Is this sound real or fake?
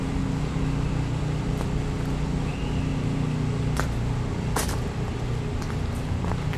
real